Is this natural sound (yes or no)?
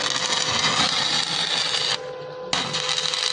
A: yes